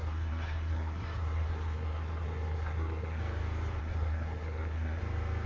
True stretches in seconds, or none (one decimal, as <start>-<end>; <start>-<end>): 3.2-3.8; 5.0-5.5